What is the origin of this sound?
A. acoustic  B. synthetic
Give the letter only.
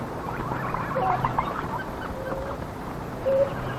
B